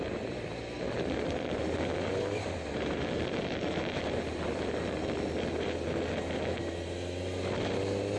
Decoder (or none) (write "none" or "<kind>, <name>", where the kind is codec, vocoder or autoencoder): none